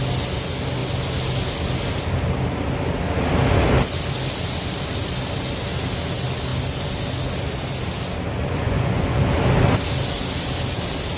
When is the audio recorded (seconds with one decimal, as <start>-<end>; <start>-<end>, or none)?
0.0-8.4; 9.2-11.2